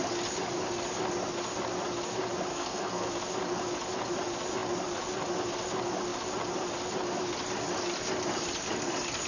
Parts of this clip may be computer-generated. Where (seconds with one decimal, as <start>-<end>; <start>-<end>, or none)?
2.5-3.1